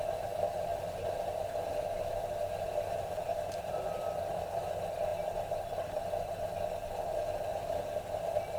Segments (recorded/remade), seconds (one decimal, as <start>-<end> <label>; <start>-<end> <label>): 0.0-8.6 recorded